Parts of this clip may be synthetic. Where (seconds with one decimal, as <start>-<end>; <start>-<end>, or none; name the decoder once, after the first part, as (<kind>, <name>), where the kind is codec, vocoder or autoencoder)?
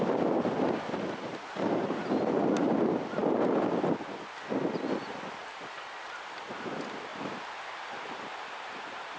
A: 1.3-2.0 (vocoder, BigVGAN v2); 7.1-9.2